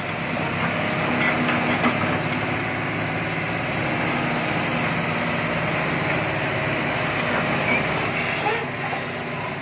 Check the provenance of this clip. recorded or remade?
recorded